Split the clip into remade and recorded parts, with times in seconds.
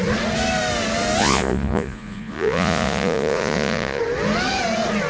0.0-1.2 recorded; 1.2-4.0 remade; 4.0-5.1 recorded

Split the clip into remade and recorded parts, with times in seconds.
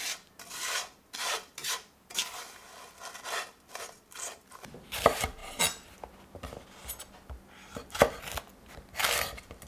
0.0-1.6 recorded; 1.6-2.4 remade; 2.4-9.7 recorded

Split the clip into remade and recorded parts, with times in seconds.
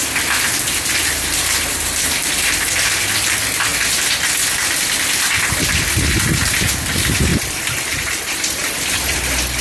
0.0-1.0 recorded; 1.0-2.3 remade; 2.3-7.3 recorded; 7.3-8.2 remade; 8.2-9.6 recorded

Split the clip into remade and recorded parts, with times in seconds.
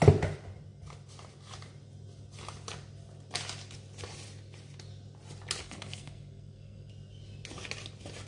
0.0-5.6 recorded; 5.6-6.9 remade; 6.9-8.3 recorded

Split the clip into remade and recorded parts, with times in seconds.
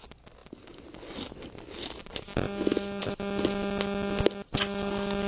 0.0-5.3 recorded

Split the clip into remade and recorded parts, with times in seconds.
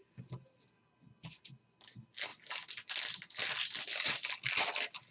0.0-5.1 recorded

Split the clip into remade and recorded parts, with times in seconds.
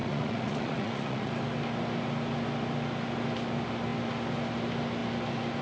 0.0-1.3 remade; 1.3-5.6 recorded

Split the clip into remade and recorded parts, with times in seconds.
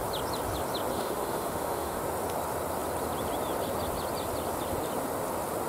0.0-0.9 recorded; 0.9-2.0 remade; 2.0-5.7 recorded